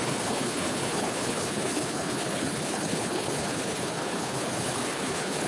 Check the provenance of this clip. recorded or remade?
remade